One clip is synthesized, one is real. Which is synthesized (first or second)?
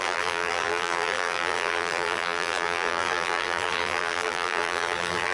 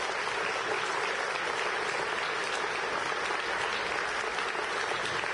first